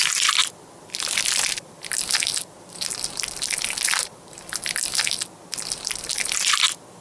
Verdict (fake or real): real